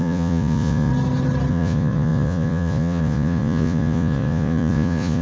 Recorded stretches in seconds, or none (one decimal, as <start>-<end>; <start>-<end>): 0.9-1.5